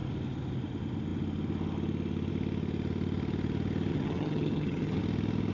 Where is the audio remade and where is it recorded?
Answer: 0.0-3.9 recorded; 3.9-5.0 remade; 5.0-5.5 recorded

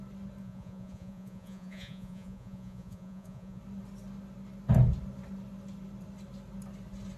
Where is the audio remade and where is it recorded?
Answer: 0.0-0.4 recorded; 0.4-3.6 remade; 3.6-7.2 recorded

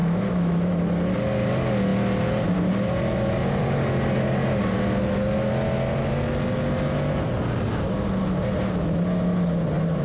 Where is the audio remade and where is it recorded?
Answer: 0.0-0.8 remade; 0.8-10.0 recorded

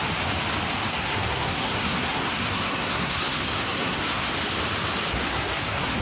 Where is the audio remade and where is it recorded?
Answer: 0.0-0.9 recorded; 0.9-4.3 remade; 4.3-5.1 recorded; 5.1-6.0 remade

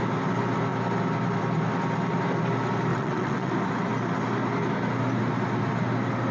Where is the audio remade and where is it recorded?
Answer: 0.0-2.9 recorded; 2.9-3.5 remade; 3.5-6.3 recorded

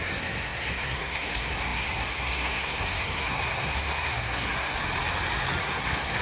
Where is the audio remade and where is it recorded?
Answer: 0.0-4.7 remade; 4.7-5.6 recorded; 5.6-6.2 remade